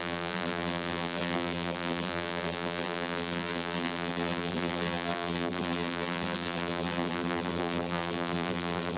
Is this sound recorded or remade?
remade